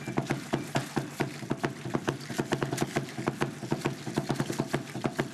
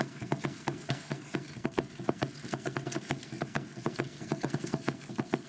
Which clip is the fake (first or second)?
second